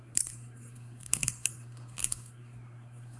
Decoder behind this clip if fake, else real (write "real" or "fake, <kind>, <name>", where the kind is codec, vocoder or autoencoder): fake, codec, SNAC